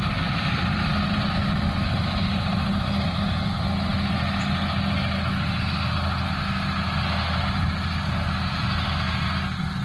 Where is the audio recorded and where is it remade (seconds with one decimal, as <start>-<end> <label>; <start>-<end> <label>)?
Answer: 0.0-9.8 recorded